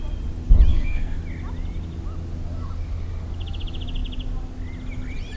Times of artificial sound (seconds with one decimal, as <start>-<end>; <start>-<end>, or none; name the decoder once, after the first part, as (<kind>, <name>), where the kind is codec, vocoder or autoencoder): 0.7-1.2 (codec, SNAC)

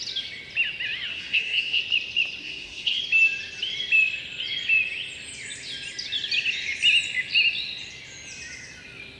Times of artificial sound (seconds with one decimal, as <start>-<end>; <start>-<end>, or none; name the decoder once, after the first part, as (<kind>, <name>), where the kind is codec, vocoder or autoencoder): 1.1-1.8 (codec, SNAC); 2.4-3.0

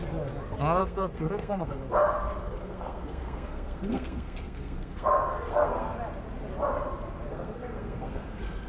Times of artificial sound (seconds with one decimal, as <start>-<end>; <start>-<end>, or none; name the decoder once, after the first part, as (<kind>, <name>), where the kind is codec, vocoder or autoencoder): 0.8-1.9 (codec, SNAC); 2.4-5.9; 7.3-8.7

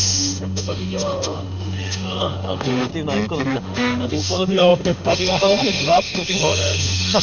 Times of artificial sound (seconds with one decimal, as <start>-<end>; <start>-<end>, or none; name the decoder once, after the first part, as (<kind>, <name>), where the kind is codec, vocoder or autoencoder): 0.0-2.9 (autoencoder, DAC-VAE); 3.5-7.2